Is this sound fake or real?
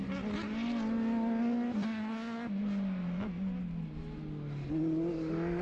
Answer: real